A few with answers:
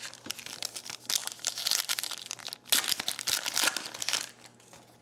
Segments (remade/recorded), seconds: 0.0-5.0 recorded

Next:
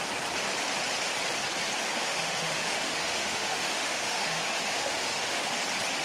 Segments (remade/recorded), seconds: 0.0-1.9 recorded; 1.9-5.5 remade; 5.5-6.0 recorded

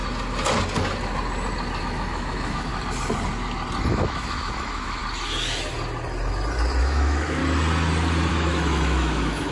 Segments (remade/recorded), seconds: 0.0-1.8 recorded; 1.8-2.7 remade; 2.7-3.9 recorded; 3.9-5.0 remade; 5.0-6.8 recorded; 6.8-7.4 remade; 7.4-8.3 recorded; 8.3-9.5 remade

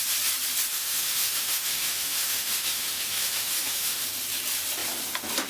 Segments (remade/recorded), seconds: 0.0-0.7 recorded; 0.7-4.0 remade; 4.0-5.5 recorded

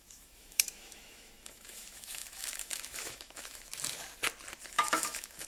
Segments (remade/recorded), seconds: 0.0-3.7 remade; 3.7-4.7 recorded; 4.7-5.5 remade

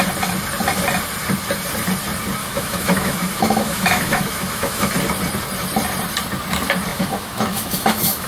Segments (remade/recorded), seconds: 0.0-2.4 recorded; 2.4-4.9 remade; 4.9-6.9 recorded; 6.9-8.3 remade

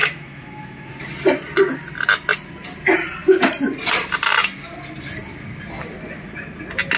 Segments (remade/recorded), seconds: 0.0-0.9 remade; 0.9-7.0 recorded